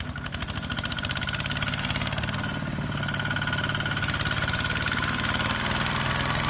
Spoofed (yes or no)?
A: no